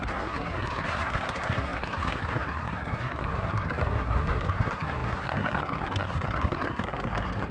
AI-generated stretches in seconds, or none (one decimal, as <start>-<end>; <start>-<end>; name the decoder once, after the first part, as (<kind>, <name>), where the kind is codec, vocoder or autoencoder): 0.0-7.5 (codec, SNAC)